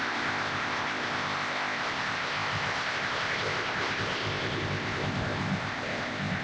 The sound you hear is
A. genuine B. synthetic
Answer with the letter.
B